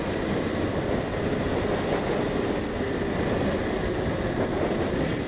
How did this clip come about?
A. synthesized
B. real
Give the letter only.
B